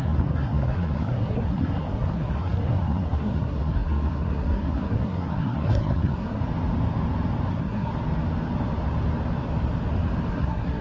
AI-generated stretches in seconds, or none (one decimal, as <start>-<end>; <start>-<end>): 0.0-6.4; 7.5-7.9; 10.3-10.8